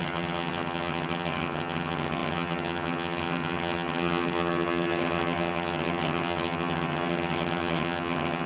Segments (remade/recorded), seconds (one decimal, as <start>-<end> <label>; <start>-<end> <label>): 0.0-8.5 remade